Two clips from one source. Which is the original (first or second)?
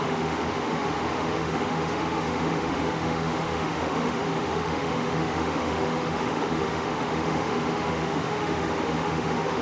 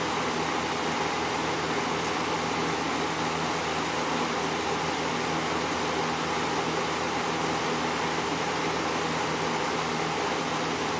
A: second